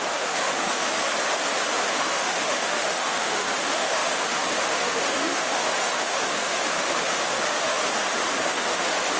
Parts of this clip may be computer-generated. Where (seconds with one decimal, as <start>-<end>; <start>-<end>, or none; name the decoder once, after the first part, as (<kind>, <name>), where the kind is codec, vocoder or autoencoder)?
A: 0.0-1.1 (autoencoder, DAC-VAE); 2.0-7.8; 8.4-9.2